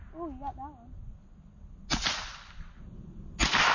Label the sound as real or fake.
real